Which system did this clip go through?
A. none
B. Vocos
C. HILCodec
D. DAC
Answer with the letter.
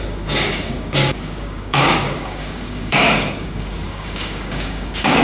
D